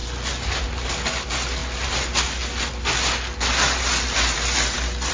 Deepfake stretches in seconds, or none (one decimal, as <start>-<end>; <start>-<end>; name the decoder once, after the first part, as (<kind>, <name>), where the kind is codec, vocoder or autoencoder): none

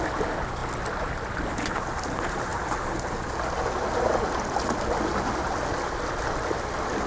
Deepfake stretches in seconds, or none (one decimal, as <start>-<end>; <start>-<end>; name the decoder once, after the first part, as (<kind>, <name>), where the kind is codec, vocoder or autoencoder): none

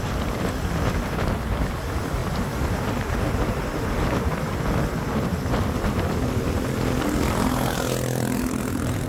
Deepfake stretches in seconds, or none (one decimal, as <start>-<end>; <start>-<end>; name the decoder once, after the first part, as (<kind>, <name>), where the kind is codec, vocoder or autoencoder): none

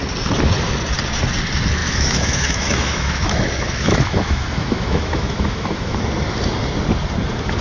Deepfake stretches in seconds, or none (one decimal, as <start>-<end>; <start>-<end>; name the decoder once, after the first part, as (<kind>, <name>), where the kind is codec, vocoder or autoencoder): 1.8-6.0 (autoencoder, DAC-VAE)

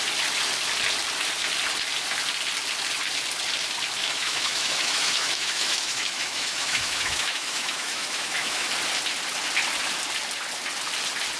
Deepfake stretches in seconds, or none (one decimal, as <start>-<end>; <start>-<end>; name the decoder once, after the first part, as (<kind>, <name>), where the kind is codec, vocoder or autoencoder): 4.0-8.7 (autoencoder, DAC-VAE)

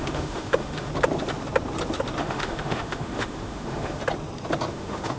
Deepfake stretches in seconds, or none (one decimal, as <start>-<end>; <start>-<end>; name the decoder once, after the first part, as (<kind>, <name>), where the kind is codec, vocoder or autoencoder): 0.0-0.9 (autoencoder, DAC-VAE); 2.2-4.0; 4.7-5.2

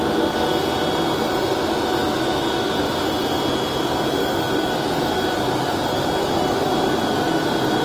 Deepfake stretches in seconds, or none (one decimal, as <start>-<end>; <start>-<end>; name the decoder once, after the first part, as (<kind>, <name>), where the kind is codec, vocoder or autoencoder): 2.0-2.7 (autoencoder, DAC-VAE)